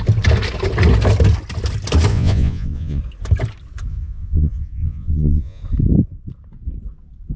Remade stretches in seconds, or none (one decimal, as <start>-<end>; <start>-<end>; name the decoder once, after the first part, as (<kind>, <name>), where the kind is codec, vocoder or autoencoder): 2.1-3.0 (vocoder, Vocos); 3.9-5.6